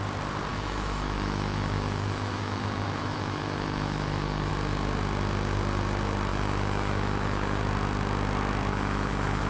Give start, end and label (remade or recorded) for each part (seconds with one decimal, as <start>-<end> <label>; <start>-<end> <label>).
0.0-0.5 recorded; 0.5-4.5 remade; 4.5-6.3 recorded; 6.3-7.6 remade; 7.6-8.7 recorded; 8.7-9.5 remade

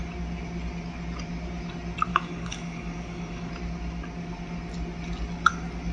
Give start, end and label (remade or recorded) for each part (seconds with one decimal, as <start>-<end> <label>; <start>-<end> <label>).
0.0-2.1 recorded; 2.1-3.5 remade; 3.5-5.9 recorded

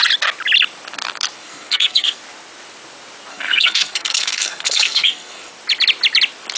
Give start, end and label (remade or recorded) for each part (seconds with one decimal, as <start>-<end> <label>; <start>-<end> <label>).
0.0-1.4 recorded; 1.4-2.2 remade; 2.2-3.3 recorded; 3.3-5.5 remade; 5.5-6.6 recorded

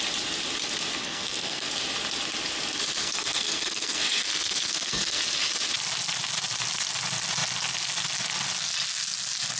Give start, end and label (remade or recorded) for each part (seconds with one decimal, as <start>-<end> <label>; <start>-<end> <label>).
0.0-1.0 recorded; 1.0-1.7 remade; 1.7-3.0 recorded; 3.0-5.2 remade; 5.2-9.6 recorded

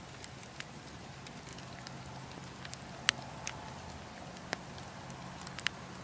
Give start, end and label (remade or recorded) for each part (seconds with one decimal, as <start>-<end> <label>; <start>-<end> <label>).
0.0-6.0 recorded

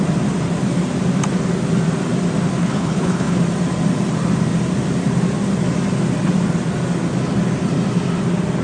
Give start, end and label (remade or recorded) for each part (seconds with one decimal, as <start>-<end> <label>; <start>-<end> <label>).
0.0-2.6 recorded; 2.6-3.4 remade; 3.4-8.6 recorded